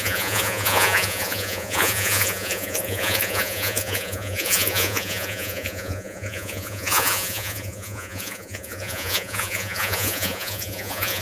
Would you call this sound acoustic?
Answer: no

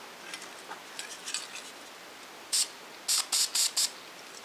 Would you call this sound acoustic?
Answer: yes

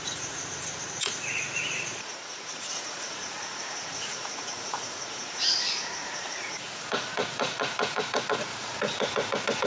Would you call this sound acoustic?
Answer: no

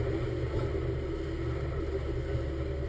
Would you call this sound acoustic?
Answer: yes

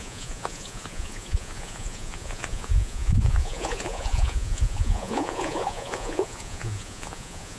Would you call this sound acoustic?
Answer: no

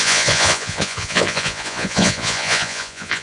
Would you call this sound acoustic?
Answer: no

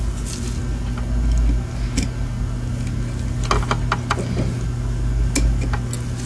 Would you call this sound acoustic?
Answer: yes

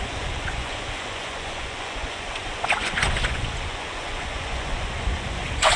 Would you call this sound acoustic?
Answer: no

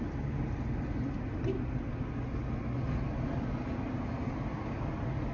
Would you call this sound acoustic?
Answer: yes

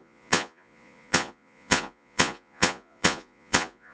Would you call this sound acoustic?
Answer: no